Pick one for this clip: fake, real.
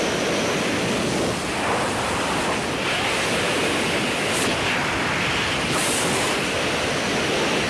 real